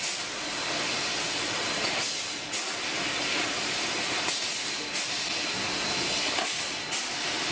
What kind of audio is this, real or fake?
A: real